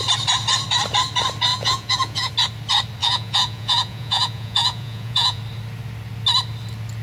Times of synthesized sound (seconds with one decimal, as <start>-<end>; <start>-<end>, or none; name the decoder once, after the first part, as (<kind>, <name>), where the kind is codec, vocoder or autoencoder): 1.5-2.3 (vocoder, Vocos); 3.0-5.4